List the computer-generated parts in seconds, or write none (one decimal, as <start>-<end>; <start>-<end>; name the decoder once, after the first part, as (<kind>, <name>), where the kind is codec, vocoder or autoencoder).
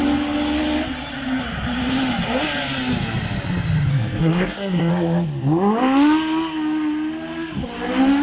3.9-4.9 (codec, SNAC)